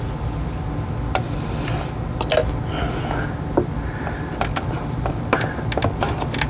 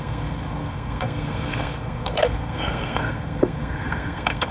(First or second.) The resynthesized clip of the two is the second